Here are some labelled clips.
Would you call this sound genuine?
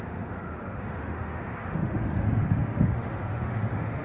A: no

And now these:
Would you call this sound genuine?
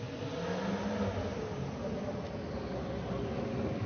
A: yes